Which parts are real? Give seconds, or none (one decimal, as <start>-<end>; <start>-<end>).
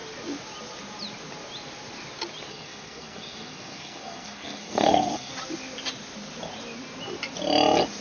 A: 0.0-2.5; 5.3-8.0